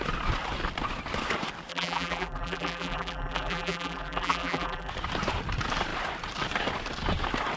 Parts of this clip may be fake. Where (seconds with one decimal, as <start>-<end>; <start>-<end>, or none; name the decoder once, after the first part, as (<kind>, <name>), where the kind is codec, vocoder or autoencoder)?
1.7-4.9 (vocoder, BigVGAN v2)

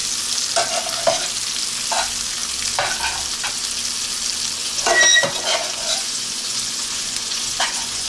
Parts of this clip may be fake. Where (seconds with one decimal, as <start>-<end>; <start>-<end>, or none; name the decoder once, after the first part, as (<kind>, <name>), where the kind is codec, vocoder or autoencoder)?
4.6-8.1 (vocoder, Vocos)

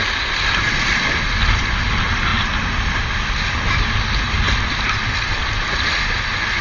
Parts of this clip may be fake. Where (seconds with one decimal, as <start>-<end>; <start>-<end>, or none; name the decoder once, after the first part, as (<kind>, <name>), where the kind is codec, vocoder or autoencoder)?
none

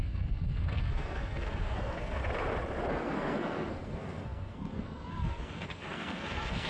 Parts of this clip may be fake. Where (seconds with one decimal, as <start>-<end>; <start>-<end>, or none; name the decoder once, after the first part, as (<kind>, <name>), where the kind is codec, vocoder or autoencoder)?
0.0-2.2 (codec, SNAC); 2.9-6.7

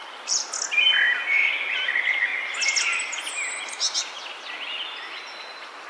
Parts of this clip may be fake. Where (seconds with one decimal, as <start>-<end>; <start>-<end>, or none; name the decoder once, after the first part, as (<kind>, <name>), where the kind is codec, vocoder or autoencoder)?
none

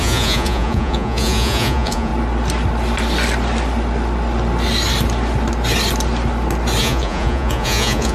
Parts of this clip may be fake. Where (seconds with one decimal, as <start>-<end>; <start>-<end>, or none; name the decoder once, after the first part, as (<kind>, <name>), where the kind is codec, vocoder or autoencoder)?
0.0-2.1 (vocoder, Vocos); 6.8-8.1